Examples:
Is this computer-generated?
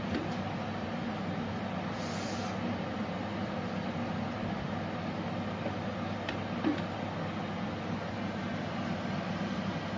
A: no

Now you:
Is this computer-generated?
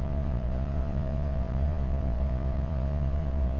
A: yes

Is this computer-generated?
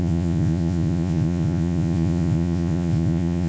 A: yes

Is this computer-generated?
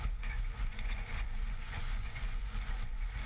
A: yes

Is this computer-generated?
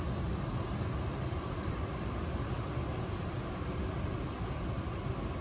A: no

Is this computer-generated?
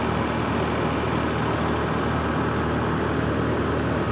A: no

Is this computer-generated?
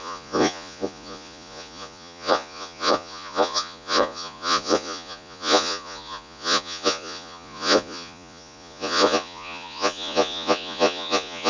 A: yes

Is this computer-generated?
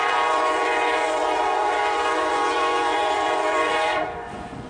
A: yes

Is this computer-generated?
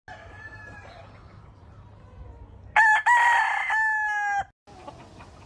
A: no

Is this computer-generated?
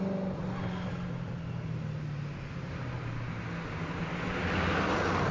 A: no